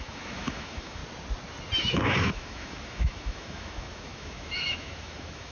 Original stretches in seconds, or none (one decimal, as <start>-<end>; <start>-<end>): 1.0-1.8